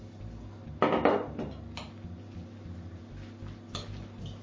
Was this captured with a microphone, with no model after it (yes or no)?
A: yes